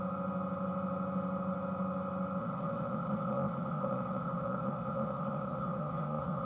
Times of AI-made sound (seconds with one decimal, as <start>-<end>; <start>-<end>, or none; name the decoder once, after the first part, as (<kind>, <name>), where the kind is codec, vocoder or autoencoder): 2.4-6.5 (codec, ZipCodec)